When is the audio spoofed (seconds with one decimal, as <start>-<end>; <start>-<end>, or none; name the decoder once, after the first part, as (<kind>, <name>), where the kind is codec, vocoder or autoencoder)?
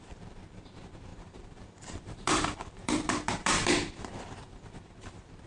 0.0-5.5 (vocoder, BigVGAN v2)